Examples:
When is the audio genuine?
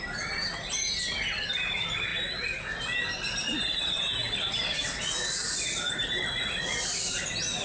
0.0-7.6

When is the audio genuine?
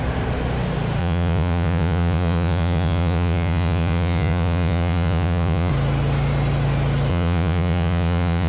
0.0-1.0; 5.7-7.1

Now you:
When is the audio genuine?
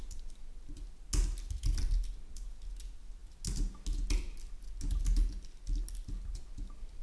0.0-7.0